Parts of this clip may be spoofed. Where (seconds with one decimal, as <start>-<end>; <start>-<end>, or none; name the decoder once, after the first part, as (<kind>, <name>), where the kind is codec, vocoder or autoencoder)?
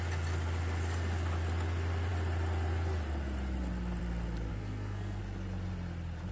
4.5-5.2 (codec, SNAC)